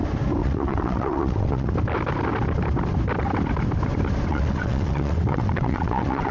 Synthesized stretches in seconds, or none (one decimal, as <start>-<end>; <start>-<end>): 0.4-1.7; 4.3-6.3